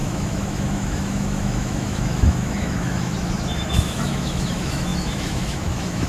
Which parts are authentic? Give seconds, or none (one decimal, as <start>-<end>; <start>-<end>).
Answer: none